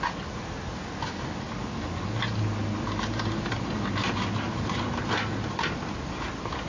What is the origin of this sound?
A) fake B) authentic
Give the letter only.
B